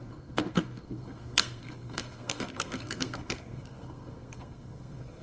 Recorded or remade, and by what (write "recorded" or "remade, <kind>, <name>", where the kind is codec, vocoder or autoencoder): remade, codec, SNAC